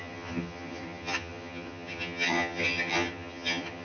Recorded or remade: remade